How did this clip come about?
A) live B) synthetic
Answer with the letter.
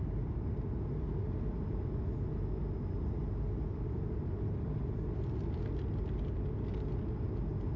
A